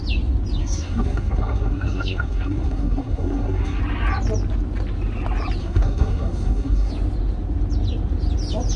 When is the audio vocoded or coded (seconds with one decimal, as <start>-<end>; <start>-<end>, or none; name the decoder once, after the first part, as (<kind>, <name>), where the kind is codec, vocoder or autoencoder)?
0.6-3.8 (codec, SNAC); 5.6-6.9